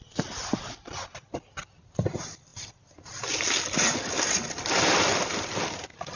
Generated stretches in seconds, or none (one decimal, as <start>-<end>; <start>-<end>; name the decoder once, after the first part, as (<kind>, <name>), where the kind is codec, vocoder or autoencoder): none